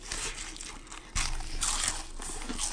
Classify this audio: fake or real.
real